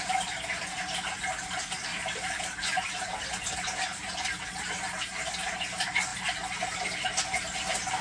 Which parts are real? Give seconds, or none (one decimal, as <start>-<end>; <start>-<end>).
0.0-1.9; 2.4-8.0